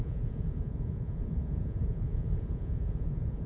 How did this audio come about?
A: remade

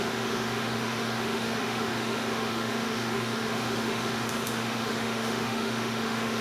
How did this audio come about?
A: remade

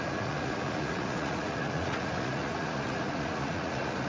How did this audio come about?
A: remade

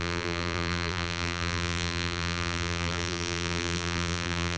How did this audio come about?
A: remade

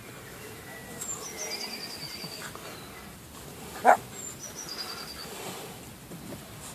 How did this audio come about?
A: recorded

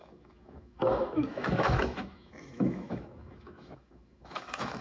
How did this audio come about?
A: remade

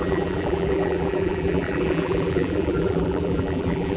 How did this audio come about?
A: remade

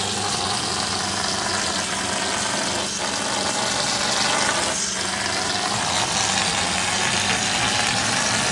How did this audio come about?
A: recorded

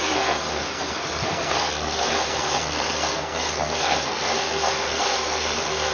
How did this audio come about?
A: remade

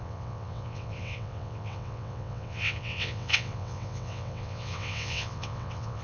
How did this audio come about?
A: remade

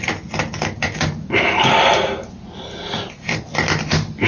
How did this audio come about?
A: recorded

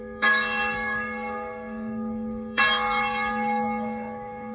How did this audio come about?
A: remade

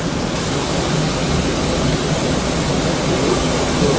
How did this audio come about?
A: recorded